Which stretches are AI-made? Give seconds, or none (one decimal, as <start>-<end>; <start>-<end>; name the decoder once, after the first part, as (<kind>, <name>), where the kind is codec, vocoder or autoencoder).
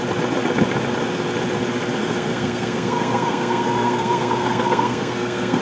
2.0-5.6 (codec, SNAC)